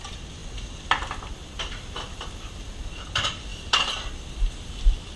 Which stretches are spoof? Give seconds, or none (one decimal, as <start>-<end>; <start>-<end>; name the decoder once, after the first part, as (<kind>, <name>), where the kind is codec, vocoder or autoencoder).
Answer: 0.0-0.4 (vocoder, BigVGAN v2); 1.3-5.2